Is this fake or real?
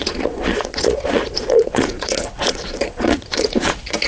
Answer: fake